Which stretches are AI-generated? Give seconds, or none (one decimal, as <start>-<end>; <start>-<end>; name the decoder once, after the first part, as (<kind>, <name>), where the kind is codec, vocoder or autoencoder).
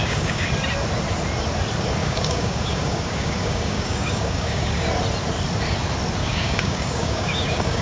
0.0-0.5 (codec, DAC); 2.0-4.9; 6.2-7.8